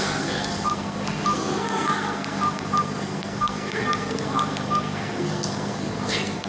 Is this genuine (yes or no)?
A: no